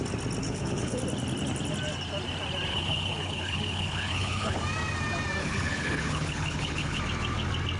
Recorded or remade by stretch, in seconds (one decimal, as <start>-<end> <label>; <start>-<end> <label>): 0.0-0.4 recorded; 0.4-1.0 remade; 1.0-2.7 recorded; 2.7-4.6 remade; 4.6-5.4 recorded; 5.4-7.0 remade; 7.0-7.8 recorded